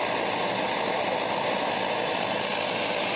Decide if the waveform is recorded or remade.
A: recorded